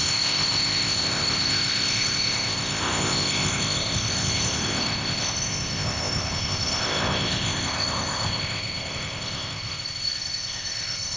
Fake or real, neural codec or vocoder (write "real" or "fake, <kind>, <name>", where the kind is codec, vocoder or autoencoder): fake, codec, ZipCodec